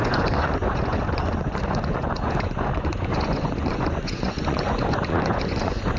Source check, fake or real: fake